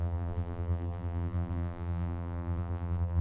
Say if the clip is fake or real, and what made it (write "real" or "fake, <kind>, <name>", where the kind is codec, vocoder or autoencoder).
fake, vocoder, BigVGAN v2